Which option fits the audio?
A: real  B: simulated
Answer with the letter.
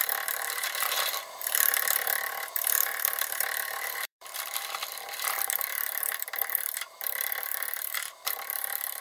B